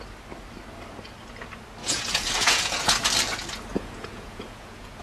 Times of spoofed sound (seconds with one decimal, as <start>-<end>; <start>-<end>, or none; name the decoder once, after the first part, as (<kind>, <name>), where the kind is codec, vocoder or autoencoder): 1.8-3.1 (vocoder, Vocos); 3.7-5.0